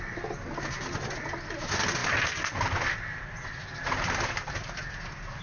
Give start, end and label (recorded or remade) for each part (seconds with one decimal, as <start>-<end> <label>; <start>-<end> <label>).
0.0-5.4 recorded